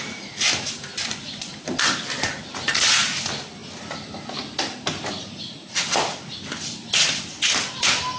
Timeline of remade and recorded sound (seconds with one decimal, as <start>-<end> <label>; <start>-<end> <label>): 0.0-0.9 recorded; 0.9-1.5 remade; 1.5-8.2 recorded